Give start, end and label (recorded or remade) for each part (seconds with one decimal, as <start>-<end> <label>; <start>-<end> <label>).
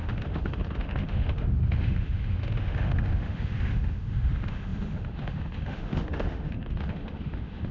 0.0-7.7 remade